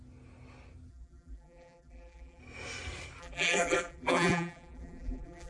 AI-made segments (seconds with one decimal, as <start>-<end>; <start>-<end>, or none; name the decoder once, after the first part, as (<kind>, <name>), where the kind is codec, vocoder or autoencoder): 0.9-2.4 (vocoder, BigVGAN v2); 3.2-5.5